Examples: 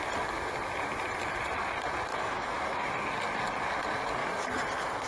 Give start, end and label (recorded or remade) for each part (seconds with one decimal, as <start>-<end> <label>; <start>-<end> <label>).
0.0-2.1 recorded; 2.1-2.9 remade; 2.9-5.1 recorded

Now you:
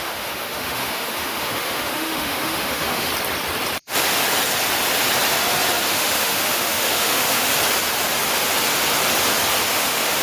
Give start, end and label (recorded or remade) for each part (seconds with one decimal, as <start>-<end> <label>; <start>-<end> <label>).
0.0-3.1 remade; 3.1-5.9 recorded; 5.9-7.5 remade; 7.5-9.7 recorded; 9.7-10.2 remade

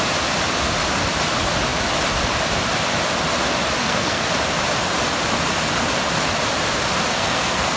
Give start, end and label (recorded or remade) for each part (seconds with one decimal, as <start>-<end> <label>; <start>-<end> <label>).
0.0-3.8 recorded; 3.8-4.3 remade; 4.3-7.1 recorded; 7.1-7.8 remade

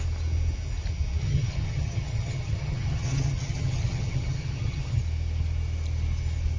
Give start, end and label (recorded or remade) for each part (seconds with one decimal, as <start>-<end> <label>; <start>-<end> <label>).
0.0-1.2 recorded; 1.2-5.0 remade; 5.0-6.6 recorded

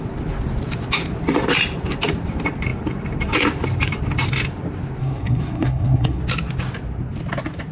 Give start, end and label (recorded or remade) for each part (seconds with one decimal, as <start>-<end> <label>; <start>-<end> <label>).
0.0-5.0 recorded; 5.0-6.2 remade; 6.2-7.7 recorded

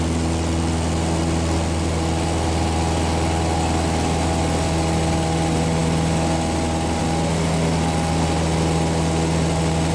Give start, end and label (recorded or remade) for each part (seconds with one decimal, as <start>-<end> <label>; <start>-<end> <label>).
0.0-9.9 recorded